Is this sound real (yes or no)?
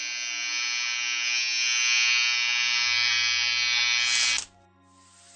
yes